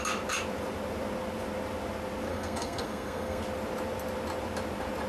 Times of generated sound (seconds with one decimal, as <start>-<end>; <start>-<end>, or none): 2.3-3.4